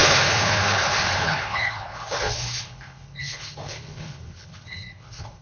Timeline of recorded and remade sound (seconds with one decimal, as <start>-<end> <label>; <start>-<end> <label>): 0.0-5.4 remade